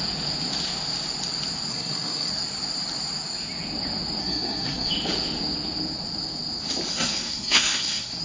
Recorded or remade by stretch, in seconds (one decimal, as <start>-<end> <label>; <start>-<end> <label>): 0.0-1.7 recorded; 1.7-2.3 remade; 2.3-4.2 recorded; 4.2-4.9 remade; 4.9-6.9 recorded; 6.9-8.2 remade